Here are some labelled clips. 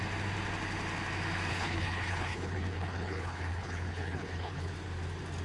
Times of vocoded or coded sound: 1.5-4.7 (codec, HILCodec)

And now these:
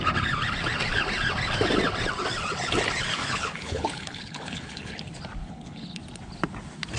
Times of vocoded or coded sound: 3.2-5.0 (codec, HILCodec); 5.4-6.0

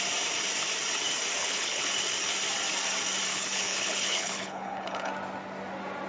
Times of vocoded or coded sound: 1.4-1.9 (codec, HILCodec); 3.3-5.1

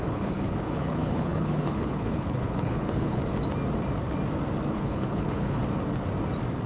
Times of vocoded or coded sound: 0.0-3.2 (codec, HILCodec); 4.7-5.6

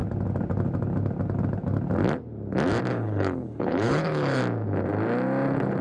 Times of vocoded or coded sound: 2.9-4.4 (codec, HILCodec)

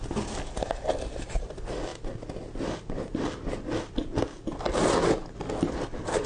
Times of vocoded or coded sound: none